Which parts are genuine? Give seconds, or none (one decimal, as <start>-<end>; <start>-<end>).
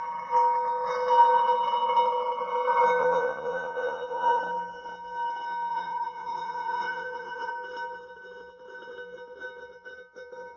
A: 0.0-3.0; 4.4-5.7; 7.5-10.6